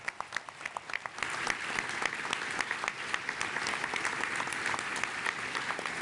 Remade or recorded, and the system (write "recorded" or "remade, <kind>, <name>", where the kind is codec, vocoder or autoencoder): recorded